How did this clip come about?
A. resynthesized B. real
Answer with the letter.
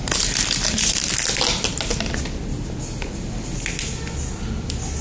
B